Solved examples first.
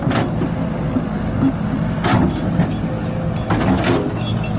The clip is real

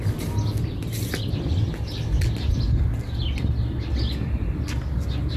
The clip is real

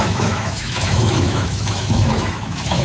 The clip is fake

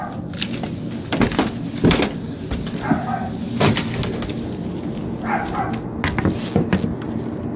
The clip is real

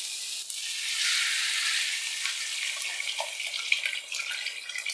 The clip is real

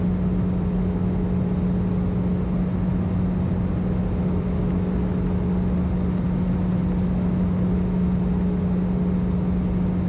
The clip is real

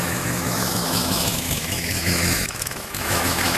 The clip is fake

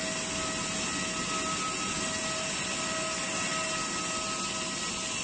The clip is real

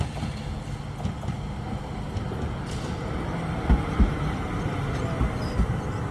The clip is real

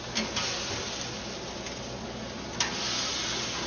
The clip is real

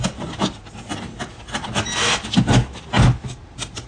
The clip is real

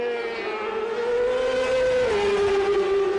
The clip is real